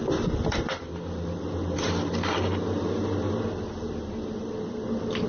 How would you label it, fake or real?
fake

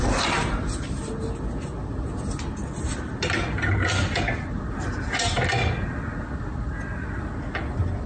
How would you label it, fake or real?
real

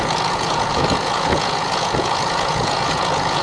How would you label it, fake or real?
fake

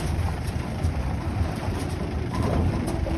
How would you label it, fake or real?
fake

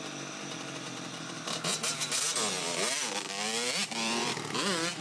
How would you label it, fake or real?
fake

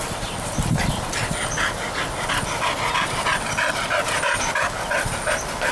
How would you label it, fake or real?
real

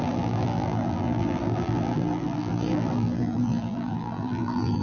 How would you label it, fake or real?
fake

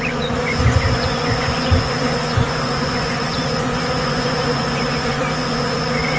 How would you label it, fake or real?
fake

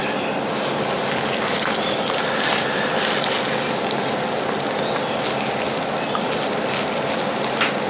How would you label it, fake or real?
real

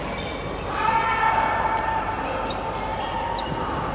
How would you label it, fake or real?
real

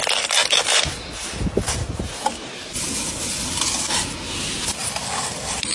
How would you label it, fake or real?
real